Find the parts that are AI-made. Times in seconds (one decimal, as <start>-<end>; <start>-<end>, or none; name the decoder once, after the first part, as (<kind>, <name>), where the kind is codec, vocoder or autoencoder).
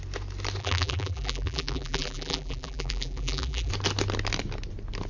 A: 0.6-3.7 (vocoder, BigVGAN v2)